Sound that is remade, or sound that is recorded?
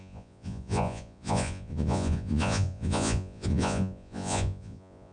remade